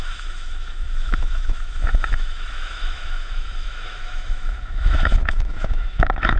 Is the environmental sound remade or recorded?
remade